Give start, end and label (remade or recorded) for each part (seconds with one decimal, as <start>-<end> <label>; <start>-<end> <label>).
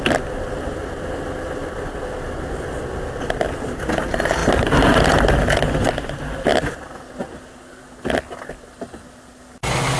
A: 0.0-10.0 recorded